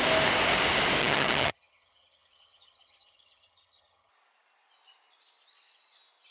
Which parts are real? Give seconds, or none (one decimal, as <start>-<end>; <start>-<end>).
0.0-1.0; 4.1-6.3